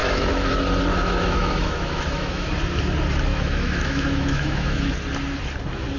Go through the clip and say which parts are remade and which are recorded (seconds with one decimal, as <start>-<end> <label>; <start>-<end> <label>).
0.0-0.5 remade; 0.5-0.9 recorded; 0.9-2.5 remade; 2.5-3.3 recorded; 3.3-4.9 remade; 4.9-6.0 recorded